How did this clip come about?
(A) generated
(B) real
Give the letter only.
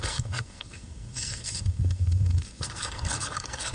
A